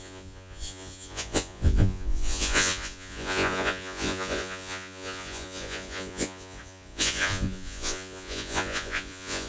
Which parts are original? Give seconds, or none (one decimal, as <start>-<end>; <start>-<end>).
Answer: none